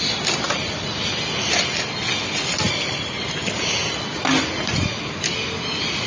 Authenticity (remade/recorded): recorded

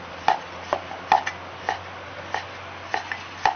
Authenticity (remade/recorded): recorded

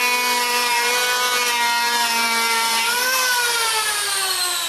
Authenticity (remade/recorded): remade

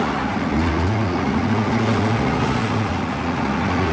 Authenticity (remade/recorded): remade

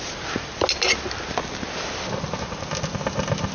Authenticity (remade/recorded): recorded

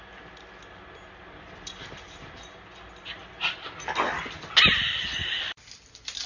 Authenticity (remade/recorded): recorded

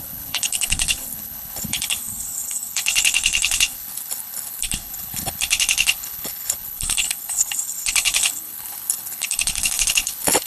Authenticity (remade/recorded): remade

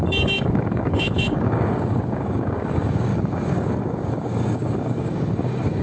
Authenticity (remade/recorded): remade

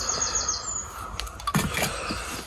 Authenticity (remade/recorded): recorded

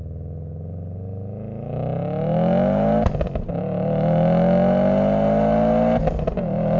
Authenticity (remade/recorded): recorded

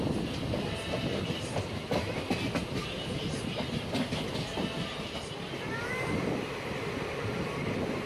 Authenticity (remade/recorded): recorded